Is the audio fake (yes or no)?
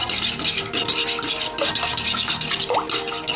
no